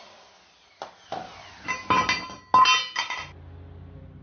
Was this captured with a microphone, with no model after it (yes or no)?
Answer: yes